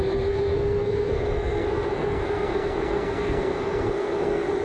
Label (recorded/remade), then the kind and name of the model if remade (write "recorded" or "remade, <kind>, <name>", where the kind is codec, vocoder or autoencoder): remade, codec, SNAC